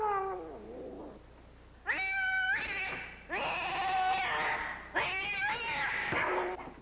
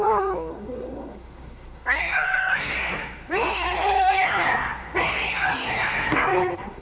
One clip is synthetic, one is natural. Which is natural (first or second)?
first